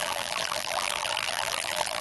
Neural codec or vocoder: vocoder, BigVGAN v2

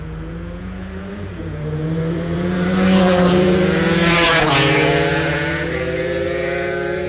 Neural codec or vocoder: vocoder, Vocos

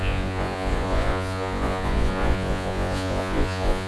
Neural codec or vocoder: vocoder, Vocos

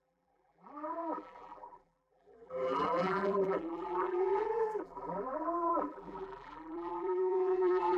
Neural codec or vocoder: vocoder, BigVGAN v2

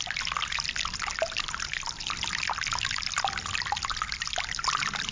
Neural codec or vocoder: none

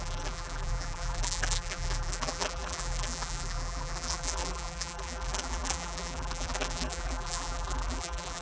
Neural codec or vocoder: vocoder, BigVGAN v2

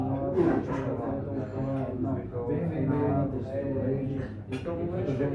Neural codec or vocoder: none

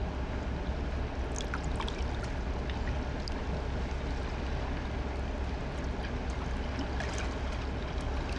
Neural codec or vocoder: none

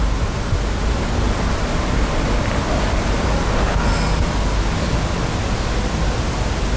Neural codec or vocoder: none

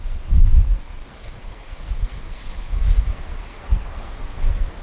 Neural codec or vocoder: codec, SNAC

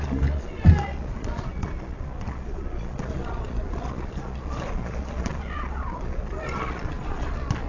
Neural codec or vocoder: vocoder, Vocos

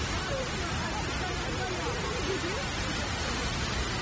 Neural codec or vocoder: none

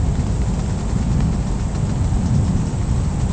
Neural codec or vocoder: none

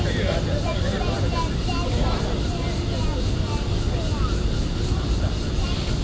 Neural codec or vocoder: none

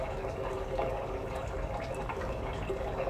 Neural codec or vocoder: codec, DAC